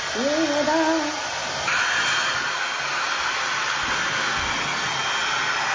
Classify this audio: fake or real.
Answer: real